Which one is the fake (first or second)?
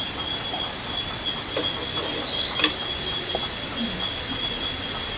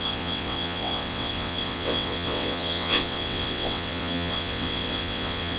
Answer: second